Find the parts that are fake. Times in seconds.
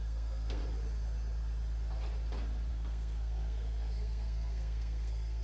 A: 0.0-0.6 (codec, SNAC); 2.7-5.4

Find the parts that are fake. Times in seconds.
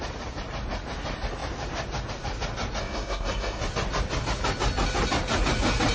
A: 2.8-3.6 (codec, SNAC)